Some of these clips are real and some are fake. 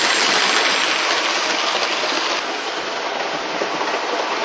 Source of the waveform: real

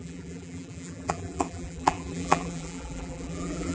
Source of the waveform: fake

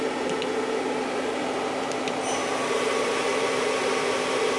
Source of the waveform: fake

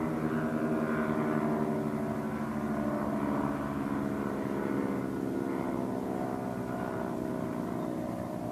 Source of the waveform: real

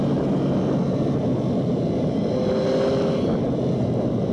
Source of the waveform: real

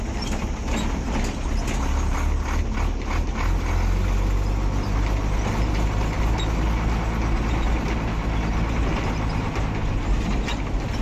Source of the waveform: real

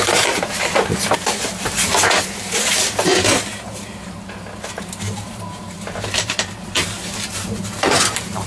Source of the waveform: fake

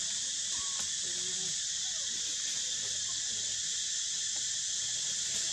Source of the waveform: fake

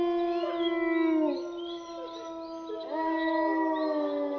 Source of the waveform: real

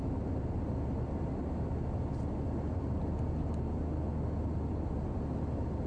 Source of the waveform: real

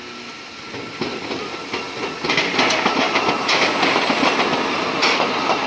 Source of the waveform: real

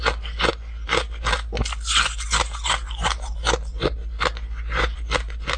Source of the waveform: real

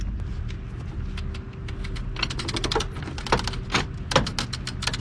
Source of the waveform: real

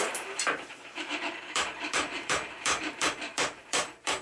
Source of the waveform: fake